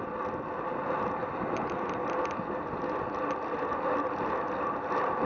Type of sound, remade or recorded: recorded